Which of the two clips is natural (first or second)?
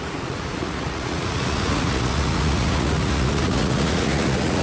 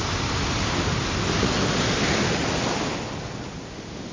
second